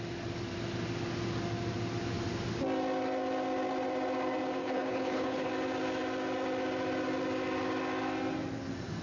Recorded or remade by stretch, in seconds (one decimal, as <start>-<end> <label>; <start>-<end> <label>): 0.0-4.6 recorded; 4.6-5.5 remade; 5.5-9.0 recorded